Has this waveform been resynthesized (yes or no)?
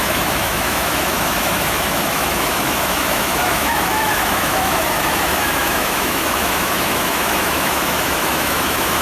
yes